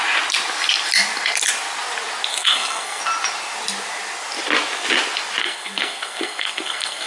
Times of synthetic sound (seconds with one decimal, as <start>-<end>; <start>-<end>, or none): 2.3-3.0; 5.4-7.1